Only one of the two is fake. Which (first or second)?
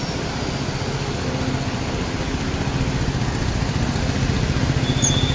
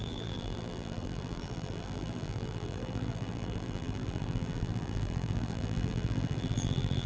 second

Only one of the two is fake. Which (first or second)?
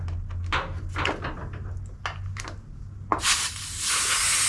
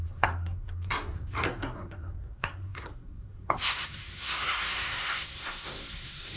second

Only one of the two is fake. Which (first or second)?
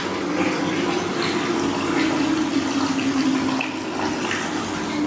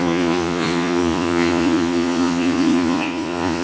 second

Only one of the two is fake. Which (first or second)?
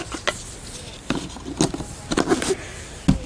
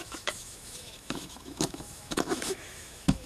second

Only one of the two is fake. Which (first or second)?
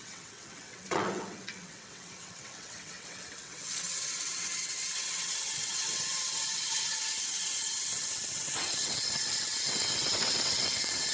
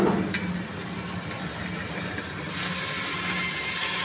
first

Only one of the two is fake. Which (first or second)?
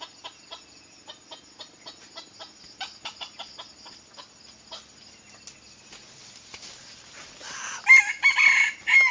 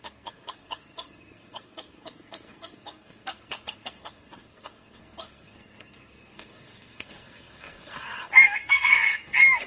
second